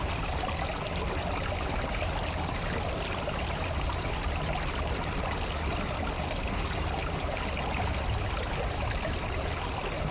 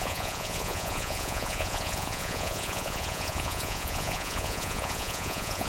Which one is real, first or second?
first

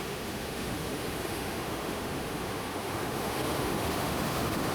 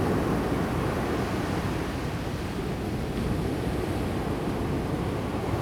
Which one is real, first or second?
second